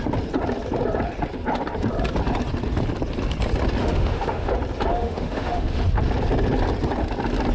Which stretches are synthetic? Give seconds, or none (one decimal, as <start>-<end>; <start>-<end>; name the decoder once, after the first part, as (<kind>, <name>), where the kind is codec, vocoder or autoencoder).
3.8-4.5 (autoencoder, DAC-VAE); 4.9-5.8